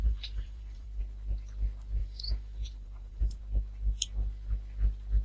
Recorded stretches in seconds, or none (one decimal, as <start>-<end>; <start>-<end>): 1.0-2.0; 3.2-5.2